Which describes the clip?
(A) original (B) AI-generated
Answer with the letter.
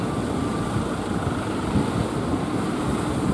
A